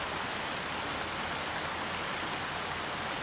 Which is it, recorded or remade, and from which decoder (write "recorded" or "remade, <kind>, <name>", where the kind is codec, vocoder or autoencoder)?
recorded